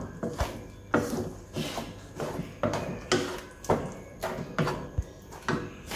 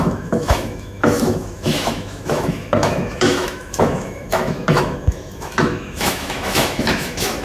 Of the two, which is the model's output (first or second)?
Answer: second